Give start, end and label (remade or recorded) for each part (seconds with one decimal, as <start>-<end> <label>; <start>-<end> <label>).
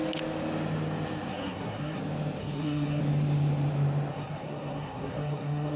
0.0-1.3 recorded; 1.3-2.0 remade; 2.0-2.4 recorded; 2.4-3.0 remade; 3.0-4.1 recorded; 4.1-5.8 remade